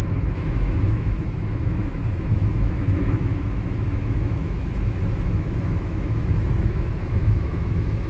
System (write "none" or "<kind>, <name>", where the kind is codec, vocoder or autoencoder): autoencoder, DAC-VAE